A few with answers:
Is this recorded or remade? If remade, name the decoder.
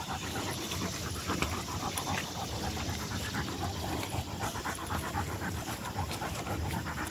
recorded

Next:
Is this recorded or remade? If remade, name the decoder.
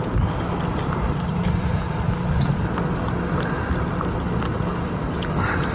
recorded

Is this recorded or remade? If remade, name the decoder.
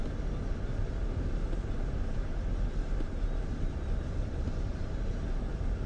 recorded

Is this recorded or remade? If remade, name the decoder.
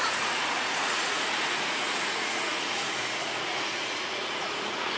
remade, vocoder, Vocos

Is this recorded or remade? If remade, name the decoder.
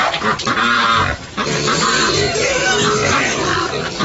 recorded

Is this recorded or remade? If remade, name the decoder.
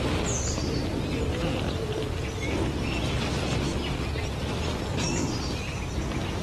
recorded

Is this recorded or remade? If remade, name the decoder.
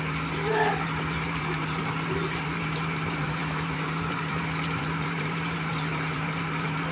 remade, vocoder, BigVGAN v2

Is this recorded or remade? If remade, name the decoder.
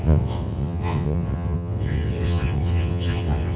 remade, vocoder, WaveNeXt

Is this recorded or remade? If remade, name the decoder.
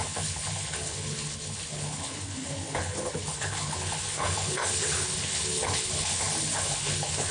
remade, codec, HILCodec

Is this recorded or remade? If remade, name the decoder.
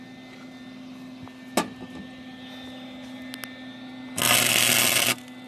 recorded